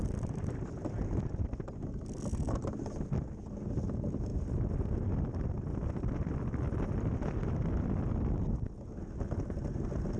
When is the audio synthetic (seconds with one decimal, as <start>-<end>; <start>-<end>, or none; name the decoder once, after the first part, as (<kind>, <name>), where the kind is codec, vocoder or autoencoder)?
none